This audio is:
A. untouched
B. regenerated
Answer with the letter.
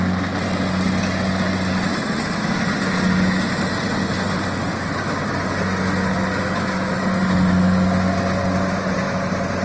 A